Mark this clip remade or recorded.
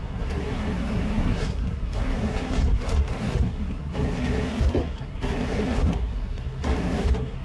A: remade